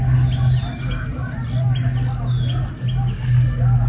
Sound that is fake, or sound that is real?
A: real